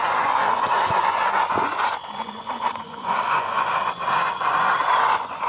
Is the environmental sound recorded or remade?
remade